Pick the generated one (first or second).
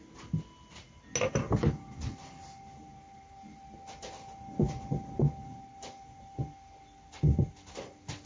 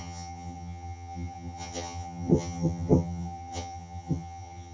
second